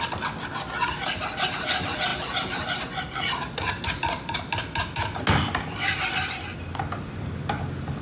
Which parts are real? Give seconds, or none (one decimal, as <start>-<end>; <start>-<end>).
0.0-8.0